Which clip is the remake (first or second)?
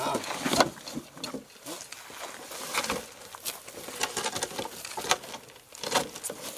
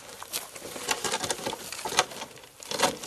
second